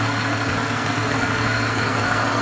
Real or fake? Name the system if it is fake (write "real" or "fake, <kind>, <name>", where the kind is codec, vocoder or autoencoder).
fake, codec, SNAC